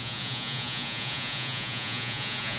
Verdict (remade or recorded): remade